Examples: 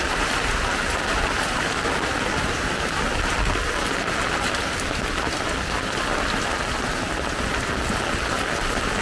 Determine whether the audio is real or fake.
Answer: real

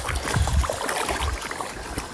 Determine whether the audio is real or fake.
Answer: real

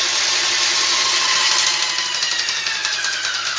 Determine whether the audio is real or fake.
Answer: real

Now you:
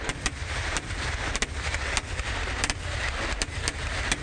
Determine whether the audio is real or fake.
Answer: real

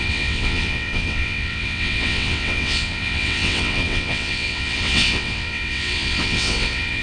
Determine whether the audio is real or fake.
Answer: fake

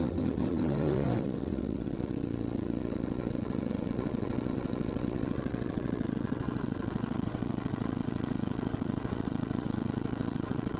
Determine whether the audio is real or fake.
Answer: fake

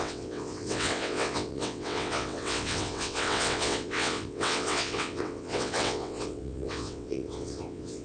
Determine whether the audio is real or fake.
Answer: fake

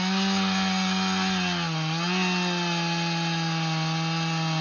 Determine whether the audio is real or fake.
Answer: real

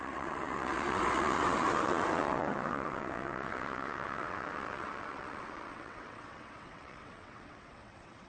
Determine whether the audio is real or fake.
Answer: fake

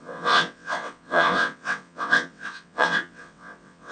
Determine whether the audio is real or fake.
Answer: fake